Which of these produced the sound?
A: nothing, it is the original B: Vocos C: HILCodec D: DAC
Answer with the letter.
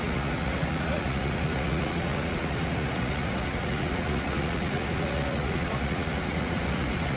B